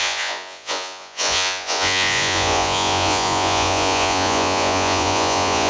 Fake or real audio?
fake